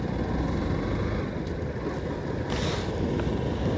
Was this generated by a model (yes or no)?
no